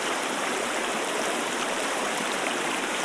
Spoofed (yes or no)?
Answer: yes